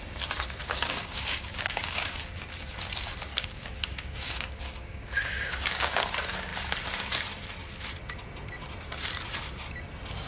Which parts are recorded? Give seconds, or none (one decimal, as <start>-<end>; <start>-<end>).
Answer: 0.0-0.6; 2.2-3.3; 6.1-10.3